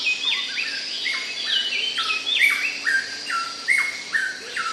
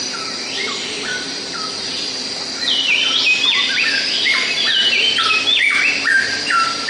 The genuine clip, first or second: first